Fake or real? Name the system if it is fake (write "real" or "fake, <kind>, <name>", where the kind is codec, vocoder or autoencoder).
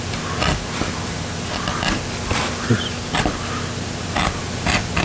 real